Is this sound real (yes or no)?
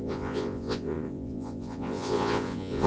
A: no